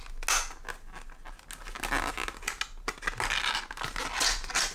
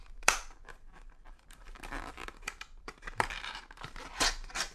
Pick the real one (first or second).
first